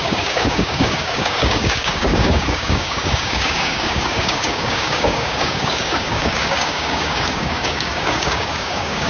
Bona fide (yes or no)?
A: no